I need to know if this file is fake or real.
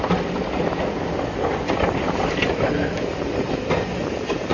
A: real